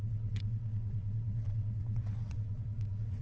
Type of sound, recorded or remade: remade